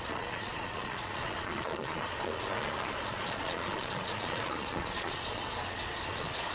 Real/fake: fake